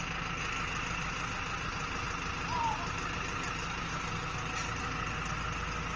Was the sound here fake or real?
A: real